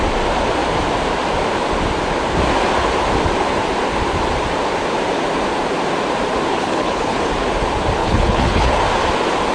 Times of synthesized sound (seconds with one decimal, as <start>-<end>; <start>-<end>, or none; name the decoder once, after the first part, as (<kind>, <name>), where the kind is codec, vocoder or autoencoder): 6.5-7.3 (codec, HILCodec); 8.0-8.8